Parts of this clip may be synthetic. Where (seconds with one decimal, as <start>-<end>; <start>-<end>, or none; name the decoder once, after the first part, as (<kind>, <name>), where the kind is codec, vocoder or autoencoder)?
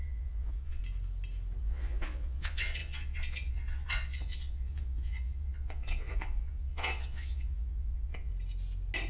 0.0-0.8 (vocoder, Vocos); 1.6-8.3